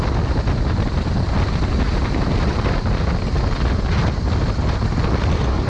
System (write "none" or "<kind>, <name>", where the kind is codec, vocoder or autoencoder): none